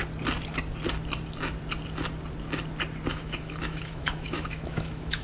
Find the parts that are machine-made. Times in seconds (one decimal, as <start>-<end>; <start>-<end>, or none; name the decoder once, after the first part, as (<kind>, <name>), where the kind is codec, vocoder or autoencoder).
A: 3.1-5.2 (autoencoder, DAC-VAE)